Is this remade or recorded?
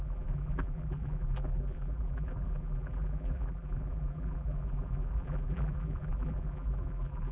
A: remade